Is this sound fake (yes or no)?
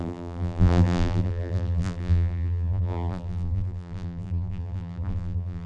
yes